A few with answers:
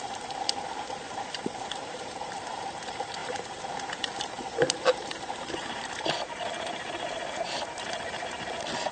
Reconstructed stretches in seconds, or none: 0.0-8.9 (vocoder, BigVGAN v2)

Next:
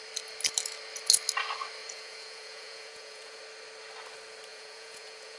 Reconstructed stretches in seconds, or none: 1.8-3.4 (vocoder, Vocos); 4.5-5.4